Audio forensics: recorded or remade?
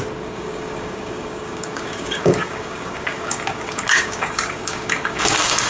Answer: remade